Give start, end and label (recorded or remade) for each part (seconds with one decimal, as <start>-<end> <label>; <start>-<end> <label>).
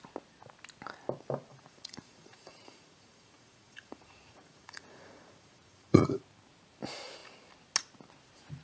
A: 0.0-1.5 recorded; 1.5-6.2 remade; 6.2-8.6 recorded